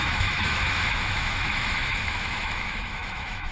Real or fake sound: fake